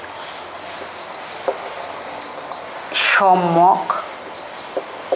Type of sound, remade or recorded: recorded